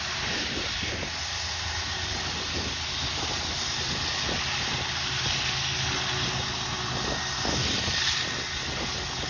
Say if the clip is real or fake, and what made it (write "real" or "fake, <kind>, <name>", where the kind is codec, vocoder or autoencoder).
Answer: real